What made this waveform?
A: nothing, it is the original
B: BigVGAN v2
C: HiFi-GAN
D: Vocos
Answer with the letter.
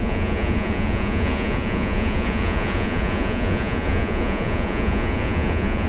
D